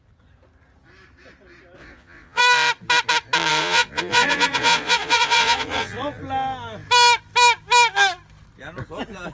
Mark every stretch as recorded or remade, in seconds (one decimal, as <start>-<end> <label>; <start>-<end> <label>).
0.0-1.8 recorded; 1.8-2.4 remade; 2.4-3.5 recorded; 3.5-6.2 remade; 6.2-9.3 recorded